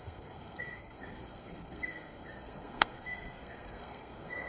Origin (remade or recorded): remade